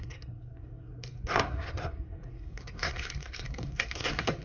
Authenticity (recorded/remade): remade